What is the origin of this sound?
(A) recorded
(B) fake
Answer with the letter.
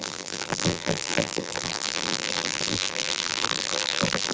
B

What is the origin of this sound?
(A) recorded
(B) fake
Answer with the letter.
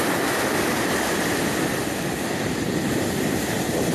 B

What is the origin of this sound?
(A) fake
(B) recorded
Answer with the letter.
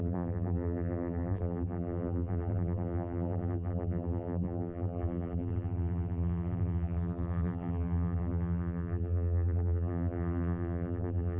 A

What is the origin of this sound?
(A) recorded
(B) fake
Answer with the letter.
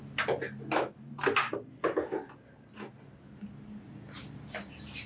A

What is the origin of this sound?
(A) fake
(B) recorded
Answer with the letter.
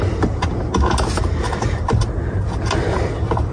B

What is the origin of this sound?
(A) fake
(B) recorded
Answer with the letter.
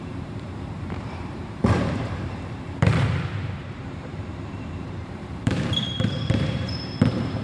A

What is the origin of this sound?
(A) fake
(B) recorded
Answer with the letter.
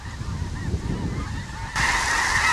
B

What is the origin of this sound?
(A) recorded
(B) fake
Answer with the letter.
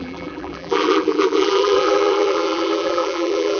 B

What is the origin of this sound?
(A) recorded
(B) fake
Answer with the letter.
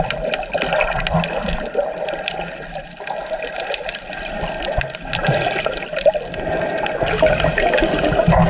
A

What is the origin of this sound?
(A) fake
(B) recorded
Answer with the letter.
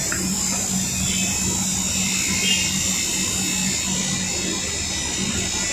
B